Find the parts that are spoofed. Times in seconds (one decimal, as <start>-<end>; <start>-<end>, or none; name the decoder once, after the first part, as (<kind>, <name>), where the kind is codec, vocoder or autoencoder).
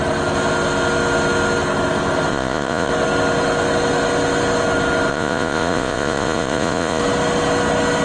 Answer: 2.3-2.9 (vocoder, Vocos); 5.1-7.0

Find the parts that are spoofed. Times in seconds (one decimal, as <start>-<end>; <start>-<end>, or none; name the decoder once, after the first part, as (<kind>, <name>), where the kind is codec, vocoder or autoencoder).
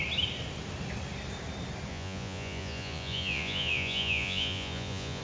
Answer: 1.9-5.2 (vocoder, Vocos)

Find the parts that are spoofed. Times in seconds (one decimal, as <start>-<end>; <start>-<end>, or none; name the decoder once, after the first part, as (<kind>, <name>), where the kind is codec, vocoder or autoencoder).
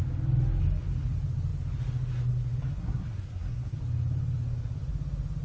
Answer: 2.7-3.8 (codec, SNAC)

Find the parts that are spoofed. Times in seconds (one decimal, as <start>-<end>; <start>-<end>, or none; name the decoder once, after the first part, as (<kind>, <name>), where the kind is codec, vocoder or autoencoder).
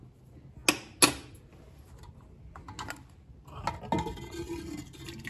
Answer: none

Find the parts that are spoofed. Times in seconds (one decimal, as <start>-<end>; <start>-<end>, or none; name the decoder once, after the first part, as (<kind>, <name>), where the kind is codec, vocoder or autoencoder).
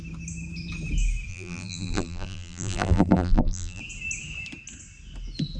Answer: 1.3-3.8 (vocoder, BigVGAN v2)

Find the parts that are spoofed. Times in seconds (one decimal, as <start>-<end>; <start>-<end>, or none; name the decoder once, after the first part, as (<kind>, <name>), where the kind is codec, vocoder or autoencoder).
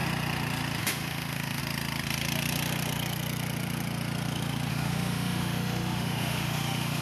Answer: 0.8-1.6 (autoencoder, DAC-VAE); 4.7-7.0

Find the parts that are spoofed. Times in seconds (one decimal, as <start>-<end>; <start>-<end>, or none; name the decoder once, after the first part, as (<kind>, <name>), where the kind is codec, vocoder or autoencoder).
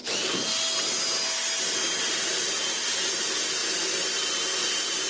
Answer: none